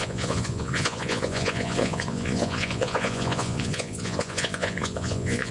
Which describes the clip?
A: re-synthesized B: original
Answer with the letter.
A